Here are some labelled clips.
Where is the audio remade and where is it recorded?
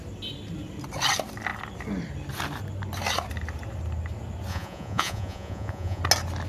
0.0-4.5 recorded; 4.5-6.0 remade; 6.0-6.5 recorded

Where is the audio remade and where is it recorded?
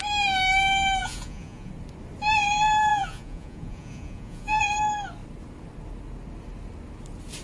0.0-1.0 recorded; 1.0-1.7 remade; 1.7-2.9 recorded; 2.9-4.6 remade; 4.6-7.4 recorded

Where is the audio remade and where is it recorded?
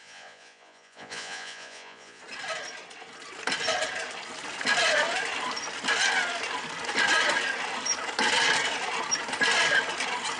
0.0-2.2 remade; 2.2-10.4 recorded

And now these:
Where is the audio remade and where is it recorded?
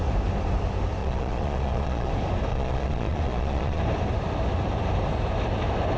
0.0-1.0 recorded; 1.0-2.1 remade; 2.1-2.5 recorded; 2.5-3.8 remade; 3.8-6.0 recorded